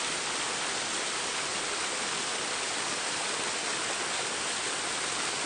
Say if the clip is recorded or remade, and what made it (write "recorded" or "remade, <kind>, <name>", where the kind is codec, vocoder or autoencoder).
recorded